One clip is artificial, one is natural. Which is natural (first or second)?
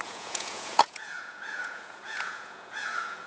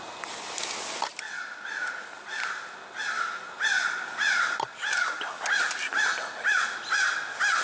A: second